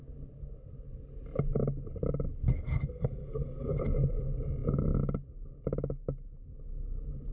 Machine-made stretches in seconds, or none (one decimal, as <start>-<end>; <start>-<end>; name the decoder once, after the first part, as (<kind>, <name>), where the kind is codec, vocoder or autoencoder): 2.5-3.8 (codec, SNAC)